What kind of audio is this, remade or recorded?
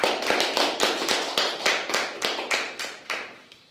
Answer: remade